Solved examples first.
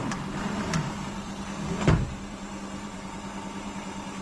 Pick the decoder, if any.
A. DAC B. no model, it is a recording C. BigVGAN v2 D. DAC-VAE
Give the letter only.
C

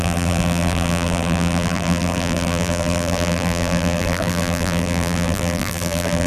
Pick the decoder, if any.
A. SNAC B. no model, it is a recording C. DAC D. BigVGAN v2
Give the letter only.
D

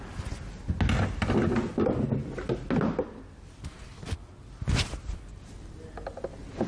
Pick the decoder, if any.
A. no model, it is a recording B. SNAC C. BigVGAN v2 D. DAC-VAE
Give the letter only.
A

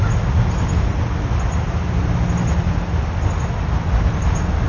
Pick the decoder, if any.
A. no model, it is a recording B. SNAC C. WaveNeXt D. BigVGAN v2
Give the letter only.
A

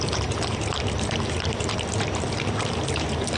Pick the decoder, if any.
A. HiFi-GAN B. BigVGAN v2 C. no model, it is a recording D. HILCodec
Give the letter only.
B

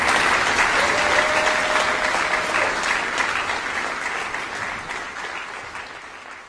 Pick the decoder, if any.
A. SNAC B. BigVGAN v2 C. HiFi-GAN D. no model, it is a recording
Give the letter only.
D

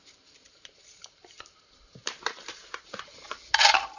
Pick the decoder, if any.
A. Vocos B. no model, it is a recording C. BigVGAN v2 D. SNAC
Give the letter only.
C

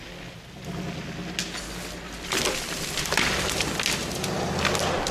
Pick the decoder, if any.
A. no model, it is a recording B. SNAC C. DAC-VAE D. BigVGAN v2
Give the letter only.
A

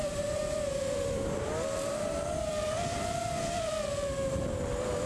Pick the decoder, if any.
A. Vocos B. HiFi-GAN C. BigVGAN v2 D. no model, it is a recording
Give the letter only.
C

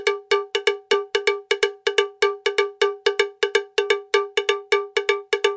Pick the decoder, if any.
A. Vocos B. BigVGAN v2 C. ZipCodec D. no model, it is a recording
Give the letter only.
D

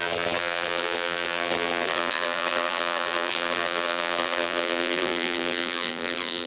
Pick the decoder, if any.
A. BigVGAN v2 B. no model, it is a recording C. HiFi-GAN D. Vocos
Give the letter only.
A